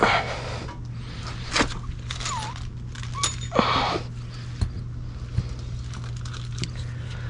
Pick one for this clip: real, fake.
real